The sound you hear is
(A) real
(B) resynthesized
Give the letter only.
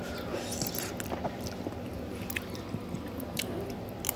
A